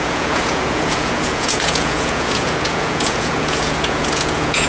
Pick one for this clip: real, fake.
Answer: fake